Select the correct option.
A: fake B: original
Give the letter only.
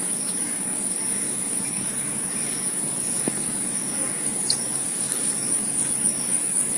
A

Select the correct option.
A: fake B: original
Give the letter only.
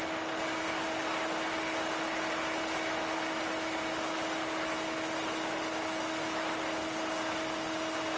B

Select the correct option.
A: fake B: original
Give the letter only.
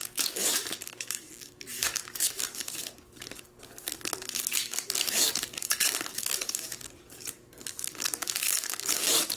A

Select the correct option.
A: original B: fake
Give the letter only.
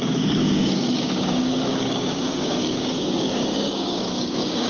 B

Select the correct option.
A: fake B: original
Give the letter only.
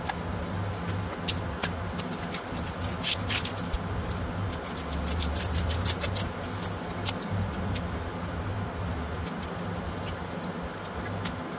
B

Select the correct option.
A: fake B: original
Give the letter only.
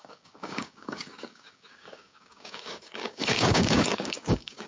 A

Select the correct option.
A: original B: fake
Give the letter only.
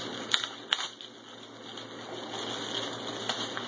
A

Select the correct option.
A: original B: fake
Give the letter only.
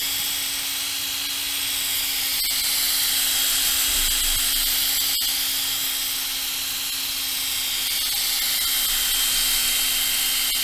A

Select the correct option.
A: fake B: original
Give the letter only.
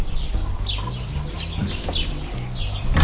B